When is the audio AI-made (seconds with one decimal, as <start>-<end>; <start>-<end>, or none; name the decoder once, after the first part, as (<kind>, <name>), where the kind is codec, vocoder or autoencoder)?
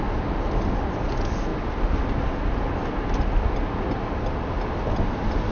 none